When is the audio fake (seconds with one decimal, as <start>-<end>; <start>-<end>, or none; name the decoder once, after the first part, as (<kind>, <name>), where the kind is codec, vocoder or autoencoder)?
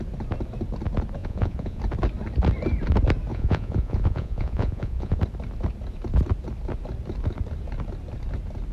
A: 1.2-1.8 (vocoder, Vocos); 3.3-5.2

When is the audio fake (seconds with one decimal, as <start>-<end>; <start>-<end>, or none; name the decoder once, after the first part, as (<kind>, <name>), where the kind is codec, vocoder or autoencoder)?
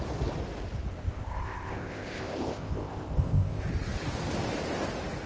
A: 0.9-3.6 (codec, ZipCodec)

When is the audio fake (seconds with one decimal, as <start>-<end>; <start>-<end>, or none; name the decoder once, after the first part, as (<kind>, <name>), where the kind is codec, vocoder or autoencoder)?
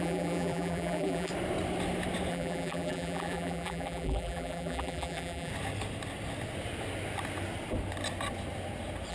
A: 0.0-1.3 (vocoder, BigVGAN v2); 2.3-5.5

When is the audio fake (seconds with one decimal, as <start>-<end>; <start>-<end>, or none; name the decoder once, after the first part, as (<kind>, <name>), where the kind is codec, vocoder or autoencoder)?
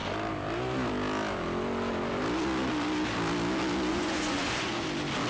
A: 3.9-4.8 (vocoder, Vocos)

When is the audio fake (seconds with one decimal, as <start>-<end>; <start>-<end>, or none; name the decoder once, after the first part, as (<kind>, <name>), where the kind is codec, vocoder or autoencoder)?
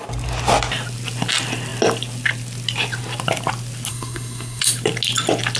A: 3.9-4.6 (codec, SNAC)